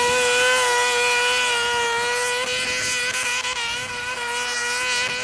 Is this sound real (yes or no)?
yes